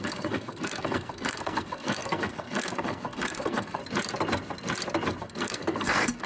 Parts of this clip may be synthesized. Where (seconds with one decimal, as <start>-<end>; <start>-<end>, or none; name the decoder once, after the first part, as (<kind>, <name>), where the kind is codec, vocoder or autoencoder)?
0.0-3.8 (codec, SNAC); 5.2-6.3